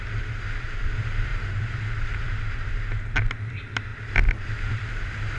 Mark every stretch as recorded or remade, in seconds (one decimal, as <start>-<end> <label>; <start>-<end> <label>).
0.0-1.3 recorded; 1.3-2.4 remade; 2.4-5.4 recorded